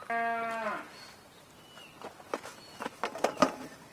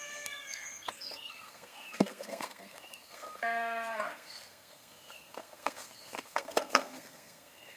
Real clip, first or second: first